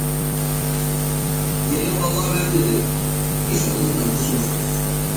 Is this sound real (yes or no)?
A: no